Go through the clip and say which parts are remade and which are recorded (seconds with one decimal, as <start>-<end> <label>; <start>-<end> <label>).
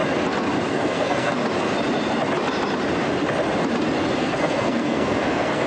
0.0-0.7 recorded; 0.7-1.4 remade; 1.4-4.2 recorded; 4.2-5.7 remade